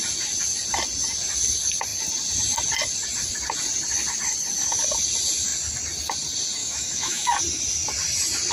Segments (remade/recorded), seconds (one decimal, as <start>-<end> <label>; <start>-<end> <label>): 0.0-6.6 recorded; 6.6-7.4 remade; 7.4-8.5 recorded

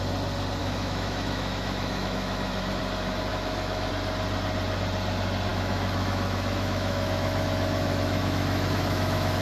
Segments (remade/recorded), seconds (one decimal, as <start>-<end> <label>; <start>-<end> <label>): 0.0-0.6 recorded; 0.6-2.8 remade; 2.8-3.3 recorded; 3.3-3.9 remade; 3.9-5.5 recorded; 5.5-9.4 remade